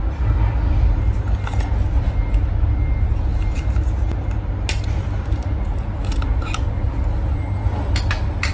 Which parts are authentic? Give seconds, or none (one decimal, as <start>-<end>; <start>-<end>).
0.0-8.5